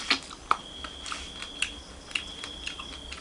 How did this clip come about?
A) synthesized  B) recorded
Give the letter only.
B